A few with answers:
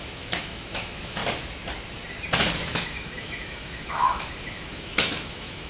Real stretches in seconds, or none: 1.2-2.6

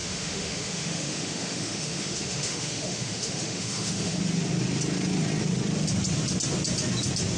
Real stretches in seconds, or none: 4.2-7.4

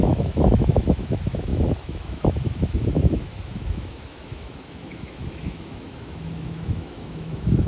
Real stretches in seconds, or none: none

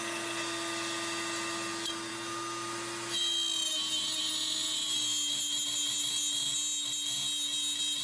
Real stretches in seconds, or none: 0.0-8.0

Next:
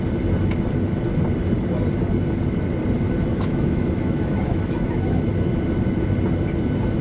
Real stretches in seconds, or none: 0.0-3.3; 5.2-7.0

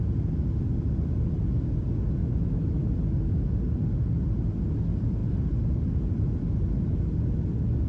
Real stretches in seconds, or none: 0.0-2.2; 2.9-7.9

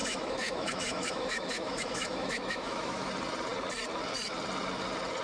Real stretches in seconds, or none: 3.1-5.2

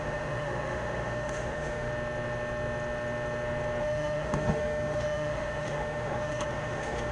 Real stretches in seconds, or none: 1.9-3.8